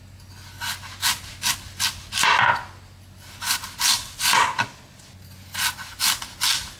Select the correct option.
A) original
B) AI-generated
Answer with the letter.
A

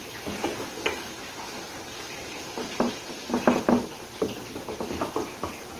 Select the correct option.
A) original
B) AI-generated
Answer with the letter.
A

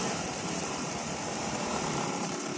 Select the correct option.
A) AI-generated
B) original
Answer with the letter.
A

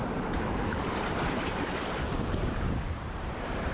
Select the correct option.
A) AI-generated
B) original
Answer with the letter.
A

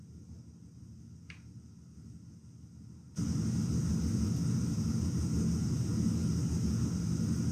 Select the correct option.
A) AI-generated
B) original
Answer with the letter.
B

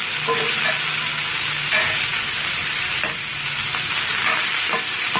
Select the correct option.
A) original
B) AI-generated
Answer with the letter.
A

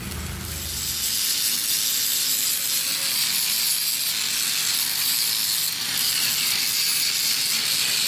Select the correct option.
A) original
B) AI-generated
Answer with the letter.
A